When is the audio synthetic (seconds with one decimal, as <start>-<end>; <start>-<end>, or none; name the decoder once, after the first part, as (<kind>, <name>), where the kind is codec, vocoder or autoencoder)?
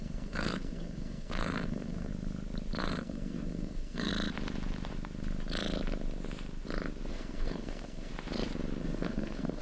0.0-2.1 (codec, SNAC); 2.8-4.1; 7.1-8.1; 8.8-9.6